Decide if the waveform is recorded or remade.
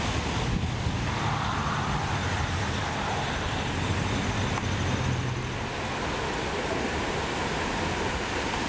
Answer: recorded